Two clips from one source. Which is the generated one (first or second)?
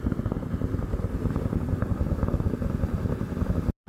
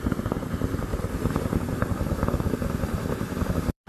second